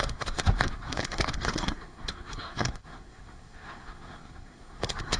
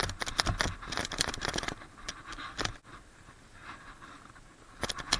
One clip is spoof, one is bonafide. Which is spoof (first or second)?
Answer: first